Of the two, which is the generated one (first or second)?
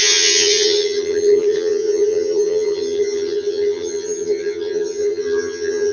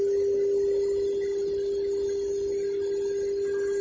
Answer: first